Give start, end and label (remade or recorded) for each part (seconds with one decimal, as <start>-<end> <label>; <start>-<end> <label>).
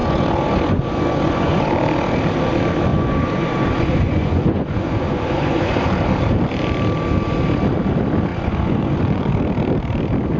0.0-1.7 remade; 1.7-2.9 recorded; 2.9-5.9 remade; 5.9-8.3 recorded; 8.3-9.3 remade; 9.3-10.4 recorded